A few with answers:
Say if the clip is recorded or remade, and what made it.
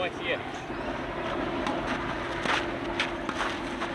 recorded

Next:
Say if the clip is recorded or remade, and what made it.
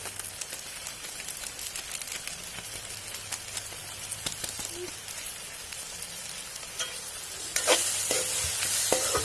recorded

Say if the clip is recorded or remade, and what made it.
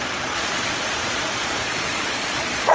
remade, vocoder, Vocos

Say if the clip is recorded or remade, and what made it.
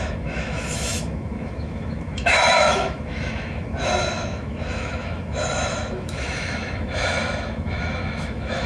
remade, autoencoder, DAC-VAE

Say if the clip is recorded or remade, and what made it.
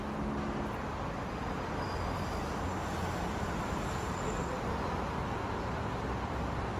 recorded